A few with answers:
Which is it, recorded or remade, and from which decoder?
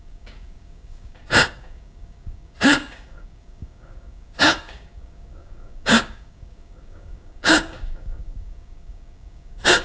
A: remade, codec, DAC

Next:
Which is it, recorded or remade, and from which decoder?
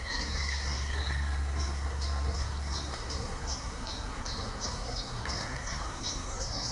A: remade, codec, SNAC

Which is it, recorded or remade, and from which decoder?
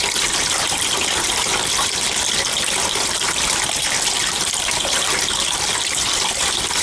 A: remade, vocoder, BigVGAN v2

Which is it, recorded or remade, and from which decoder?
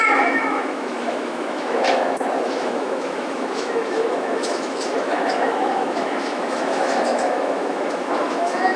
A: remade, autoencoder, DAC-VAE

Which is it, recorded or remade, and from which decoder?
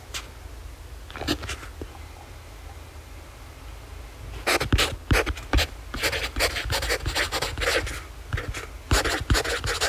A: recorded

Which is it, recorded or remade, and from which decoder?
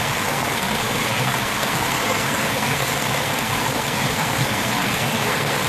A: remade, codec, SNAC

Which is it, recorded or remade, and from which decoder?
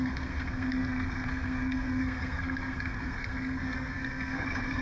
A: remade, codec, SNAC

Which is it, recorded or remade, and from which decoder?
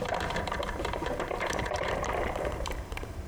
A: remade, vocoder, BigVGAN v2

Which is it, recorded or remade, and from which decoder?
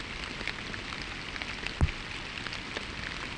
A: remade, vocoder, BigVGAN v2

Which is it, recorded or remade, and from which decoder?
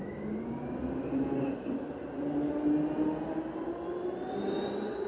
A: recorded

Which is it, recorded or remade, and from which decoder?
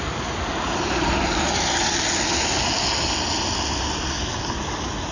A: recorded